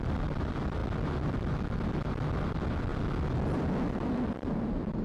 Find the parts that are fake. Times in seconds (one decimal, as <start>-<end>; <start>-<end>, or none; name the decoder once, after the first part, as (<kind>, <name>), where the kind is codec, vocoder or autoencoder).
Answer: none